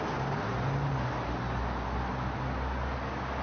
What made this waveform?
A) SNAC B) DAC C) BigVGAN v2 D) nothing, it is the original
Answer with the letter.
D